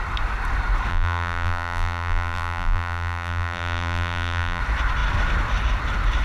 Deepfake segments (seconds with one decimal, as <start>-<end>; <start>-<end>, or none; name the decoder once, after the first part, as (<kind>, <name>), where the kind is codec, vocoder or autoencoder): 0.9-4.6 (vocoder, BigVGAN v2)